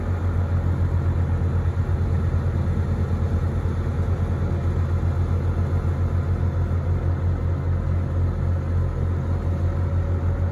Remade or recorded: recorded